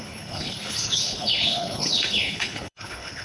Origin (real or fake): fake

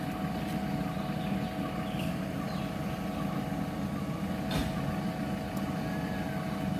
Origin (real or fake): real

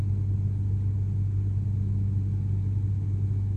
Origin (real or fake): real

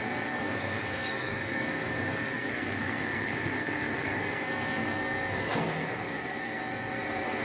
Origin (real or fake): fake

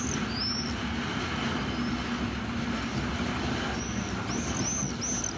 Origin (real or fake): real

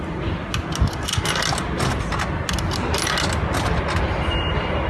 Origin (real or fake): real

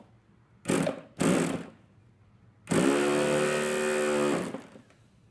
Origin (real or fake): real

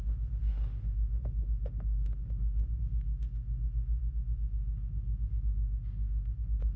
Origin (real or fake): fake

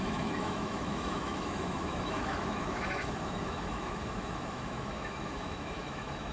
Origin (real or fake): fake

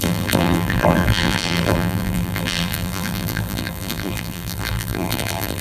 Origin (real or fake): fake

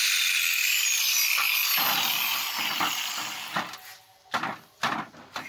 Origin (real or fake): real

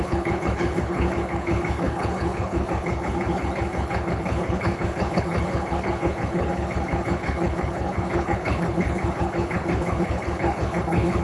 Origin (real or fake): fake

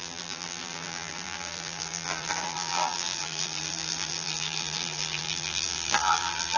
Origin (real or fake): fake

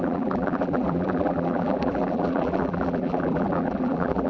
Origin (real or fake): fake